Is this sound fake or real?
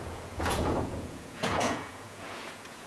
fake